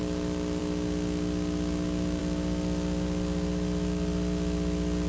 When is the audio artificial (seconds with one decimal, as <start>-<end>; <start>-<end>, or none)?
none